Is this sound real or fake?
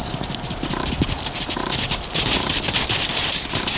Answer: real